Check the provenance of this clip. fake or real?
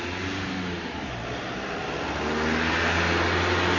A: real